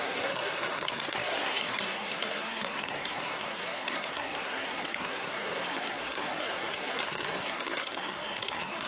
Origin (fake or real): fake